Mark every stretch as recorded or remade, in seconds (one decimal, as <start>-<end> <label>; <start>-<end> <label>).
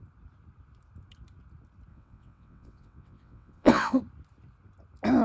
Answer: 0.0-1.9 recorded; 1.9-4.0 remade; 4.0-5.2 recorded